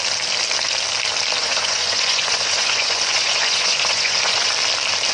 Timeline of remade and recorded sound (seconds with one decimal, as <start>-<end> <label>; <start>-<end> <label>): 0.0-1.4 recorded; 1.4-4.5 remade; 4.5-5.1 recorded